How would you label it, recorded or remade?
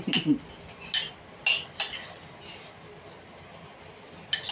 recorded